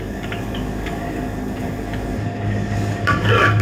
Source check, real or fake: fake